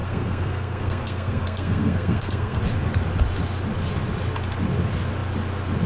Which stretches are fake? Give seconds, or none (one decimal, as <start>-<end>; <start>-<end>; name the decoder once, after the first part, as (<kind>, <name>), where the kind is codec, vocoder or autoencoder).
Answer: 0.0-2.6 (codec, SNAC)